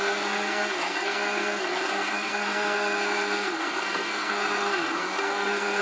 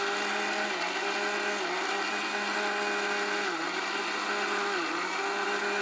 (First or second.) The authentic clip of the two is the second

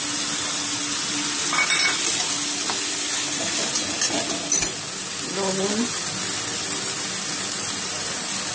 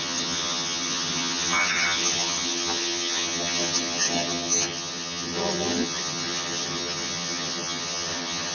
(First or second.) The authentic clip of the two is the first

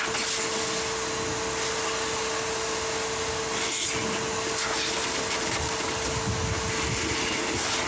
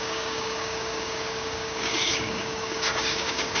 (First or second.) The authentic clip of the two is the first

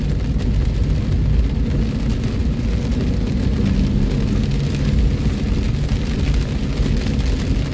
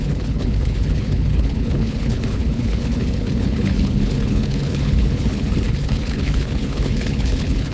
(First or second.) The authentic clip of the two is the first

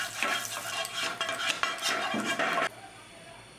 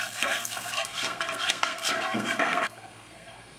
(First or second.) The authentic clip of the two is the first